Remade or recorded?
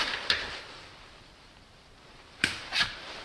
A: remade